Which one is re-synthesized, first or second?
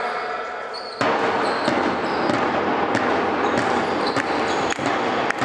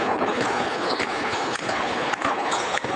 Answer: second